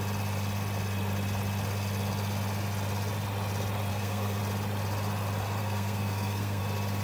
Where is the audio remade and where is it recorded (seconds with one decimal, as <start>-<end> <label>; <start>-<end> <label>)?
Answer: 0.0-3.9 recorded; 3.9-4.4 remade; 4.4-5.6 recorded; 5.6-6.6 remade; 6.6-7.0 recorded